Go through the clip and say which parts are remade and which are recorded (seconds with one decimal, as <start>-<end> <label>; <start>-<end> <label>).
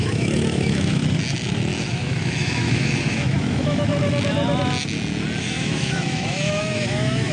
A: 0.0-1.0 remade; 1.0-1.8 recorded; 1.8-3.9 remade; 3.9-5.4 recorded; 5.4-7.3 remade